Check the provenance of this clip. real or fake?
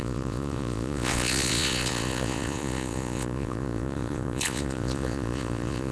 fake